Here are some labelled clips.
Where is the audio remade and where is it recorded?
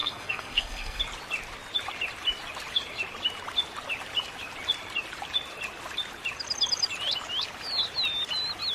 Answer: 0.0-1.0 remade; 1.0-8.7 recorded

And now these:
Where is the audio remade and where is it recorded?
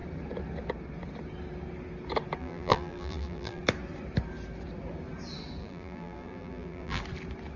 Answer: 0.0-2.4 recorded; 2.4-3.6 remade; 3.6-5.6 recorded; 5.6-7.0 remade; 7.0-7.6 recorded